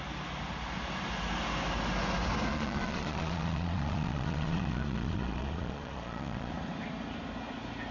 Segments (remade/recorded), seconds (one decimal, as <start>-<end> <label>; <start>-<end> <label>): 0.0-2.5 recorded; 2.5-6.5 remade; 6.5-7.9 recorded